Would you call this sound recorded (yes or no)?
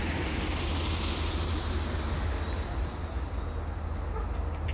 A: yes